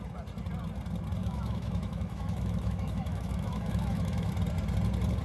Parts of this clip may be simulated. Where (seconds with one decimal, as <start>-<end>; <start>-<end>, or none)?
1.2-4.3

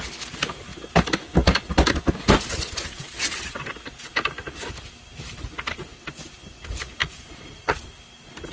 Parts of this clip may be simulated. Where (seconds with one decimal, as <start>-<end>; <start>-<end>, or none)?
7.0-7.7

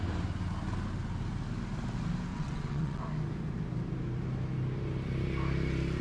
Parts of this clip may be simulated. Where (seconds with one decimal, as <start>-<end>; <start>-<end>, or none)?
2.3-3.0

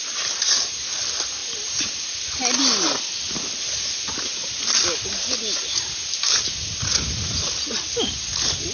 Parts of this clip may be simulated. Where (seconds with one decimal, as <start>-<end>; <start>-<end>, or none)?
none

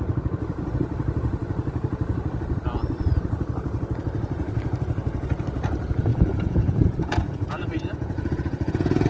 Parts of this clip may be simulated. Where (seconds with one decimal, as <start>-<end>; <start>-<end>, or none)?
6.1-9.1

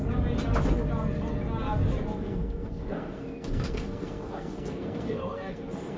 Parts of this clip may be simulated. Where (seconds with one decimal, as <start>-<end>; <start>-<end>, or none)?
2.1-6.0

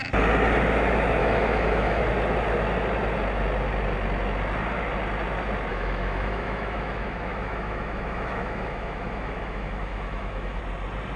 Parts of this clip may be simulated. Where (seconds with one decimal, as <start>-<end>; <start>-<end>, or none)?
1.2-2.0; 5.7-10.6